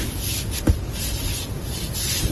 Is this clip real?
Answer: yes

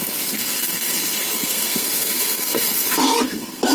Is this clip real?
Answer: no